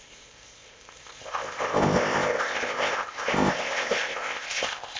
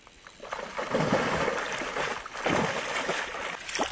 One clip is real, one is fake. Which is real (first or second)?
second